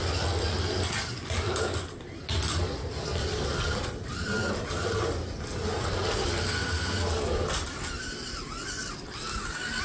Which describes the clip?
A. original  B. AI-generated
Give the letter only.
A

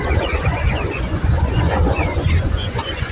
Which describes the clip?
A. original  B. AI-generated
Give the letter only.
B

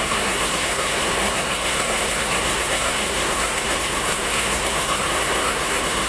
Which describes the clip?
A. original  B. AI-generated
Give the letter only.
B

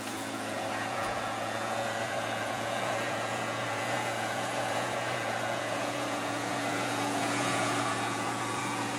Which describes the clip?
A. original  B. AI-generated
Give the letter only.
B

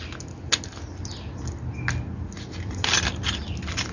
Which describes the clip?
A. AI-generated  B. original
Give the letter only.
B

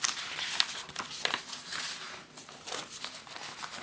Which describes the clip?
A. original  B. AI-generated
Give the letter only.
A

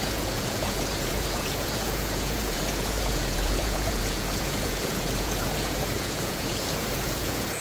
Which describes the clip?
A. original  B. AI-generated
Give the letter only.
B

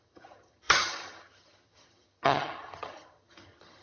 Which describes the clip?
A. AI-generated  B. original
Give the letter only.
A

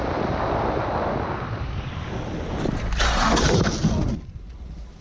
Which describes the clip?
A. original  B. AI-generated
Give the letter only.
A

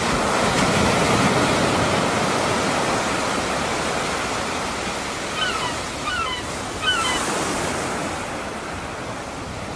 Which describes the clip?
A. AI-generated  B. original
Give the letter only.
B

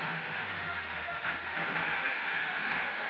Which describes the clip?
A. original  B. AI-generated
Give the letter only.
B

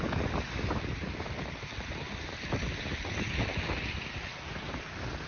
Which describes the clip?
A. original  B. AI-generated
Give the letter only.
A